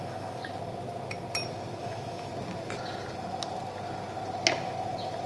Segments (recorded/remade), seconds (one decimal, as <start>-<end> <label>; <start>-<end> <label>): 0.0-0.4 remade; 0.4-1.8 recorded; 1.8-2.3 remade; 2.3-5.3 recorded